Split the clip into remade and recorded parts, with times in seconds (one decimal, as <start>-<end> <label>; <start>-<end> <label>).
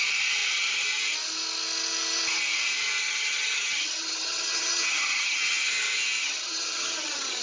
0.0-3.0 recorded; 3.0-5.7 remade; 5.7-6.2 recorded; 6.2-7.4 remade